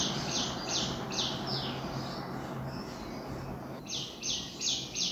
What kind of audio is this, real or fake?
real